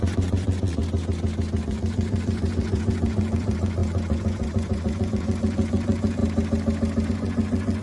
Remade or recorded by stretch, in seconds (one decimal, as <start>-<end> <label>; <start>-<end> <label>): 0.0-0.8 remade; 0.8-1.6 recorded; 1.6-6.2 remade; 6.2-7.1 recorded; 7.1-7.8 remade